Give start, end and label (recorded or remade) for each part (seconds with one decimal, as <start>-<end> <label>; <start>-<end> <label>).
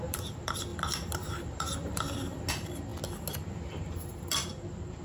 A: 0.0-2.9 remade; 2.9-3.8 recorded; 3.8-5.0 remade